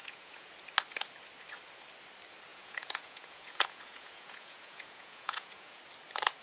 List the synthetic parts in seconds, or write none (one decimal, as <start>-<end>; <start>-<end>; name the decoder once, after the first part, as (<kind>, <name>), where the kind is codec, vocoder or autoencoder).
0.0-0.5 (vocoder, Vocos); 2.5-5.8

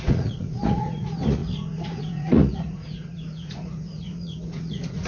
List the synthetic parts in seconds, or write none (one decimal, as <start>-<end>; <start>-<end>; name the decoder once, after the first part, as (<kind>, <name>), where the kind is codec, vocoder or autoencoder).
0.0-5.1 (vocoder, Vocos)

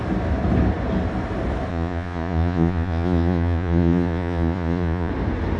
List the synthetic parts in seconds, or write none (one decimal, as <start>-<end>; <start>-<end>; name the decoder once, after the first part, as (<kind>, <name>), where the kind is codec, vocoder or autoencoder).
1.7-5.1 (vocoder, Vocos)

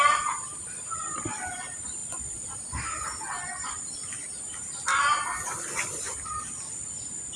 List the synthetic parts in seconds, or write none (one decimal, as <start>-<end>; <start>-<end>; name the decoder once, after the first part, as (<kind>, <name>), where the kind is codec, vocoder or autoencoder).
none

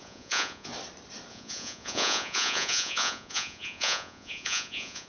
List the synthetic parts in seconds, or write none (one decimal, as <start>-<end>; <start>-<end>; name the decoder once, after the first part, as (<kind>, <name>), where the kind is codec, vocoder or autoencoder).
0.0-0.7 (vocoder, Vocos); 1.3-5.1

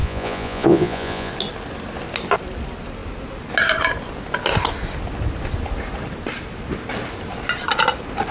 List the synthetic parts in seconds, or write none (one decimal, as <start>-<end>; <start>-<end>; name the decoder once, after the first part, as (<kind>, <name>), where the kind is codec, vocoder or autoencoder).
0.0-1.3 (vocoder, Vocos)

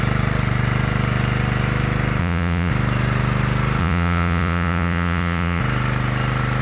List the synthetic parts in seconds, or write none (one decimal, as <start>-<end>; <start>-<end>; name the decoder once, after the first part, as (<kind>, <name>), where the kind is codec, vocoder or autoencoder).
2.2-2.7 (vocoder, Vocos); 3.8-5.6

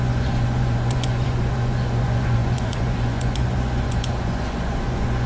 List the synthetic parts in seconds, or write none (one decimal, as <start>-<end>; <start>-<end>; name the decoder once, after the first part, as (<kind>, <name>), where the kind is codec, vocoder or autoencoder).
0.0-5.3 (vocoder, Vocos)